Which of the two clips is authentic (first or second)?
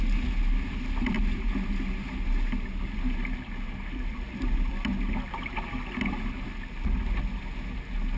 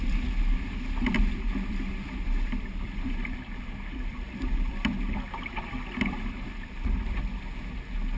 first